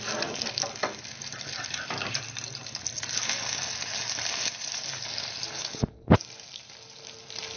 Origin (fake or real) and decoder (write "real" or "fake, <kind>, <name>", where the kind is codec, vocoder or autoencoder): real